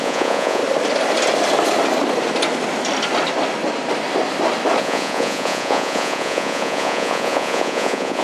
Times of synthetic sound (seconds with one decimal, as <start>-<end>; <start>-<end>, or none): 0.0-0.6; 4.8-8.2